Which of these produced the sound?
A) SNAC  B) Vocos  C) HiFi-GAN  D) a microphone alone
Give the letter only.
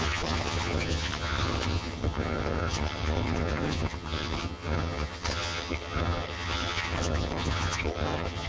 C